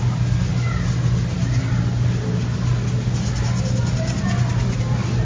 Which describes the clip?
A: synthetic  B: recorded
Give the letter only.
B